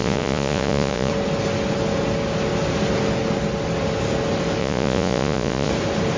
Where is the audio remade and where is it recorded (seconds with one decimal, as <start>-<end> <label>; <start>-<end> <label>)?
0.0-1.1 remade; 1.1-4.6 recorded; 4.6-5.7 remade; 5.7-6.2 recorded